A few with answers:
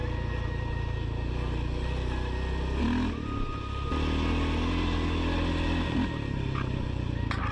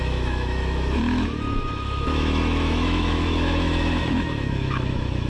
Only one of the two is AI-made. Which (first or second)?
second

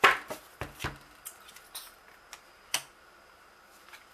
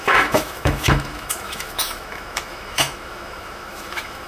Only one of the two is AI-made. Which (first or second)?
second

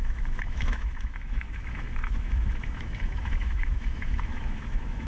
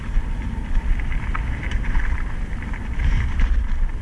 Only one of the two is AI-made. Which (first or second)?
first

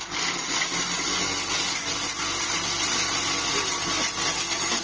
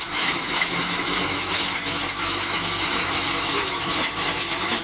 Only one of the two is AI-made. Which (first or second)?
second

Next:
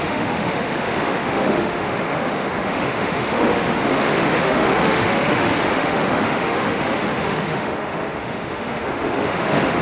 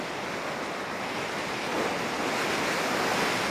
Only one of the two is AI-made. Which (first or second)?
first